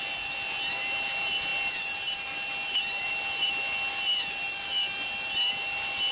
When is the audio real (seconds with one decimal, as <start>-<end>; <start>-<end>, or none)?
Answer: 0.0-6.1